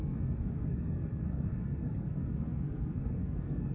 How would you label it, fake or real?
fake